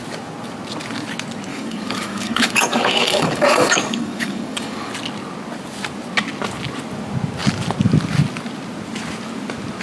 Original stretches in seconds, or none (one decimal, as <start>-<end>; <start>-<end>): 0.0-1.5; 4.9-9.8